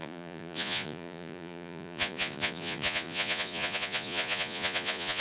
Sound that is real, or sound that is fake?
fake